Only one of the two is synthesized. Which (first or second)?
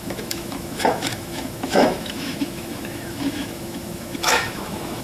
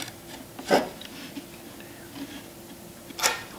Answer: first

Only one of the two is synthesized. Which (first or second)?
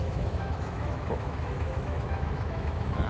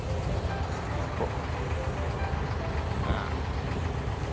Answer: first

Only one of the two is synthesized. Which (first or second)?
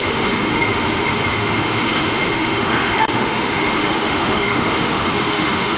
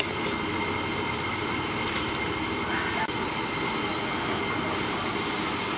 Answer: first